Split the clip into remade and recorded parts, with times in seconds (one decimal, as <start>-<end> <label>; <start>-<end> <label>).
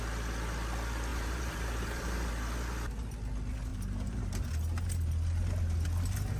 0.0-1.1 recorded; 1.1-2.3 remade; 2.3-3.7 recorded; 3.7-4.5 remade; 4.5-6.4 recorded